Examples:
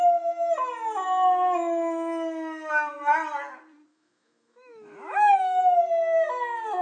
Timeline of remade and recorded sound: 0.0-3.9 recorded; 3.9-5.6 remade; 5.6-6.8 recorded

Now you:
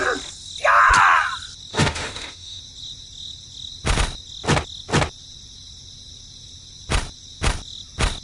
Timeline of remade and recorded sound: 0.0-1.7 recorded; 1.7-2.6 remade; 2.6-8.2 recorded

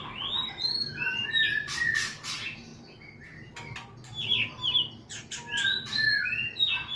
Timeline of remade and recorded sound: 0.0-7.0 recorded

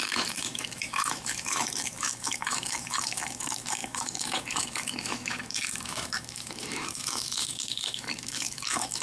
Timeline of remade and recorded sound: 0.0-9.0 remade

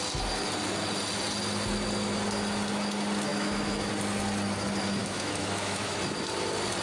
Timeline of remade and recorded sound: 0.0-3.3 recorded; 3.3-3.9 remade; 3.9-5.0 recorded; 5.0-6.0 remade; 6.0-6.8 recorded

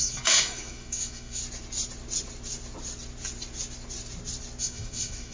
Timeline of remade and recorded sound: 0.0-1.4 remade; 1.4-4.6 recorded; 4.6-5.3 remade

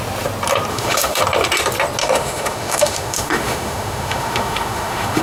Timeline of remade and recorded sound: 0.0-0.7 recorded; 0.7-1.2 remade; 1.2-2.0 recorded; 2.0-5.2 remade